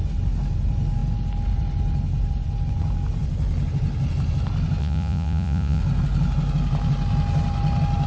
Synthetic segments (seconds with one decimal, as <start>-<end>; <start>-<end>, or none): 4.8-5.8